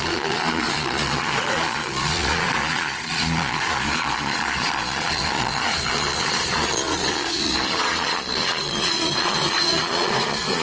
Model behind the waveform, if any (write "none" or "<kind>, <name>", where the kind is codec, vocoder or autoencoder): vocoder, Vocos